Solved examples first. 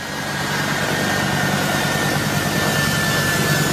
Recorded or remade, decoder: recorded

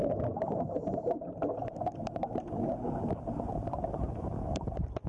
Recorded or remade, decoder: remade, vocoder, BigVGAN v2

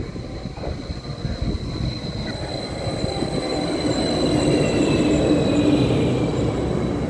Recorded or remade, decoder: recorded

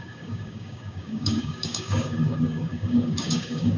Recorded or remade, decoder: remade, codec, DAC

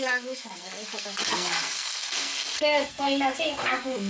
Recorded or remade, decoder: remade, codec, SNAC